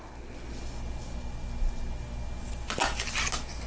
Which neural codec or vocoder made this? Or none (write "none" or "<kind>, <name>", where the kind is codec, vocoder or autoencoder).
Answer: none